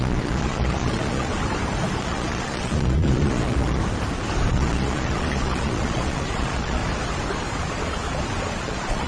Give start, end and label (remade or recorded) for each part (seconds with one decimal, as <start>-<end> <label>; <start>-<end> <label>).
0.0-1.3 remade; 1.3-2.0 recorded; 2.0-3.8 remade; 3.8-4.5 recorded; 4.5-6.8 remade; 6.8-8.6 recorded; 8.6-9.1 remade